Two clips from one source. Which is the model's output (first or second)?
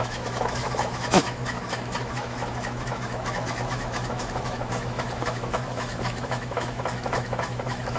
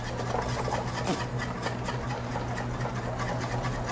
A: first